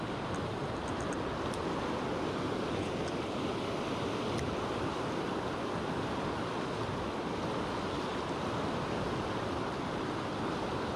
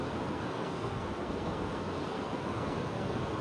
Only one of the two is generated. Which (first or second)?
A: second